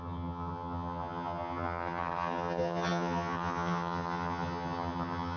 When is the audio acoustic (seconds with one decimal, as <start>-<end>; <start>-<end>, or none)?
none